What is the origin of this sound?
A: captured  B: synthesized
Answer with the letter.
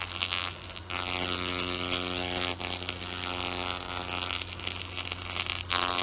A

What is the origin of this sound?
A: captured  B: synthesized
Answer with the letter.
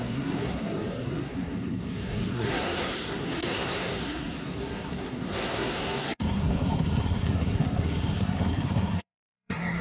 B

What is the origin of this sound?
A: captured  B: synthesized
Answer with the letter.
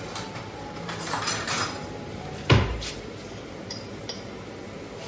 B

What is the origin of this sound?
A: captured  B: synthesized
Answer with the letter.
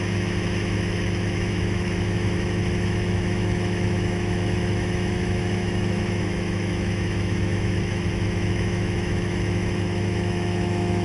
B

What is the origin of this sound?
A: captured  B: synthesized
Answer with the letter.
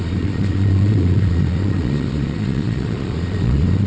B